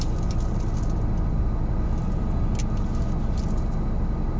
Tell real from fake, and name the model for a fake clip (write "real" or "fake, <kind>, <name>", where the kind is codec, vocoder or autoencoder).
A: real